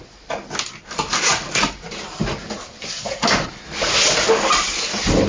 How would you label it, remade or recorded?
recorded